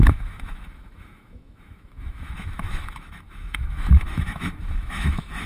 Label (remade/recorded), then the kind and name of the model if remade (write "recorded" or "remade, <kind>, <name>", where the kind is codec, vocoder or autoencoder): remade, autoencoder, DAC-VAE